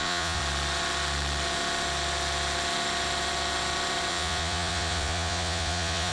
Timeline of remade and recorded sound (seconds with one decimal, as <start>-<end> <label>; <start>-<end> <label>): 0.0-0.4 remade; 0.4-4.1 recorded; 4.1-6.1 remade